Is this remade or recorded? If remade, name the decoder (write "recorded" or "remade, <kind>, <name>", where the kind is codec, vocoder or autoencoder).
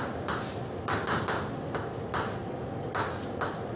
recorded